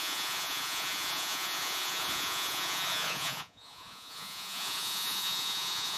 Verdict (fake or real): fake